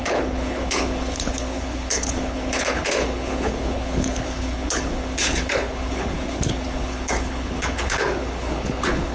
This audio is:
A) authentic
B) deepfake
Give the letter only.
B